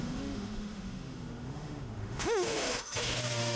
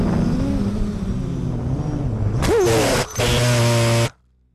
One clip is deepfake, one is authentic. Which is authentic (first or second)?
second